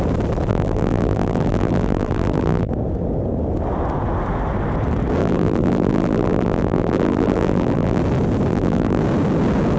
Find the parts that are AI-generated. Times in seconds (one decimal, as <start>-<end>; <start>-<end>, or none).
0.5-2.7; 5.2-8.0; 8.5-9.0